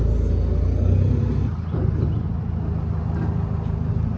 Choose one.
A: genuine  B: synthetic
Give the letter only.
A